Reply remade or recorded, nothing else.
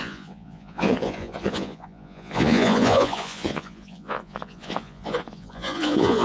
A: remade